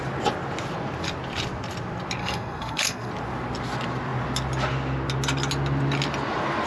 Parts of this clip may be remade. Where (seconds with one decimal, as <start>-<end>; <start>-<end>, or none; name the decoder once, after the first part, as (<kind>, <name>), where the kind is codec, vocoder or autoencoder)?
2.2-3.1 (codec, SNAC)